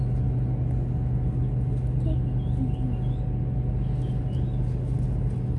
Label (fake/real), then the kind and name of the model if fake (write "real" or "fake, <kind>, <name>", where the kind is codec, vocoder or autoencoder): real